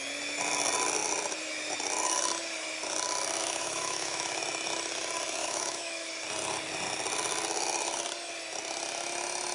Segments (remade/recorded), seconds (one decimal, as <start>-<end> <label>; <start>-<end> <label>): 0.0-3.4 recorded; 3.4-4.4 remade; 4.4-5.4 recorded; 5.4-6.1 remade; 6.1-9.5 recorded